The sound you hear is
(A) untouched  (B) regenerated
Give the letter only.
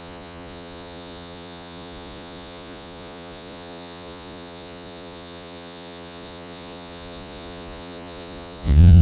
B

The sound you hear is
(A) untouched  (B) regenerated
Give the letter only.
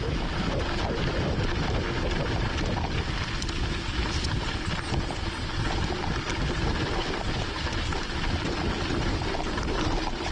A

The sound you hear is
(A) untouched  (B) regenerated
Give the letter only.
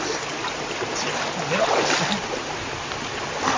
A